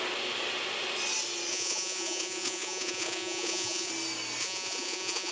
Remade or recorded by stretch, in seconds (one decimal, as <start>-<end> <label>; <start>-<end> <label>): 0.0-1.5 recorded; 1.5-3.9 remade; 3.9-4.4 recorded; 4.4-5.3 remade